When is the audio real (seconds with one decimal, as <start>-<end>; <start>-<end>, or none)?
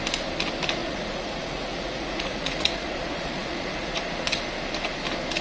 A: 0.0-0.8; 4.0-5.4